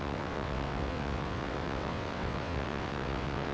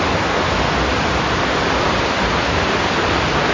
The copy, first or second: first